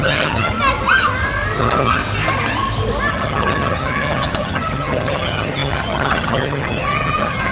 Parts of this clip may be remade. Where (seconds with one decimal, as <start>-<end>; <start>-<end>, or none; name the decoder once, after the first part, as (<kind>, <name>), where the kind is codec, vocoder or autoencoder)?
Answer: 0.0-0.5 (vocoder, HiFi-GAN); 1.6-2.0; 3.1-7.5